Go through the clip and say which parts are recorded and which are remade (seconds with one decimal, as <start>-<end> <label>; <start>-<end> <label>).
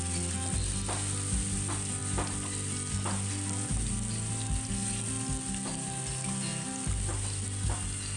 0.0-8.2 recorded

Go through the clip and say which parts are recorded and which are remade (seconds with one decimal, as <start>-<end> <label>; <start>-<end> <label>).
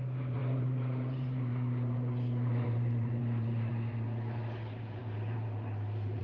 0.0-6.2 remade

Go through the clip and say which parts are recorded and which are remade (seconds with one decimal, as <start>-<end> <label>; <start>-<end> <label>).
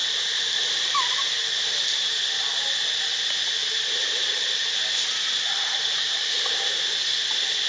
0.0-2.1 remade; 2.1-3.6 recorded; 3.6-4.3 remade; 4.3-7.7 recorded